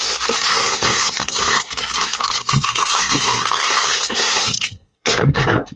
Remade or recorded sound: remade